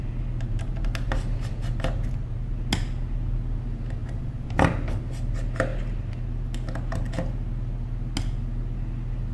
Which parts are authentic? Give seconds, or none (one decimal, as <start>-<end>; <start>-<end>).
0.0-4.0; 5.0-9.3